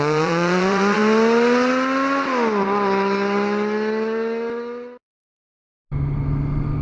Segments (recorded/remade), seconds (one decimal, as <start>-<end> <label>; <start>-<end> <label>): 0.0-1.0 remade; 1.0-5.0 recorded; 5.0-5.4 remade; 5.4-6.8 recorded